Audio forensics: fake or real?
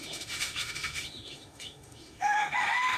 fake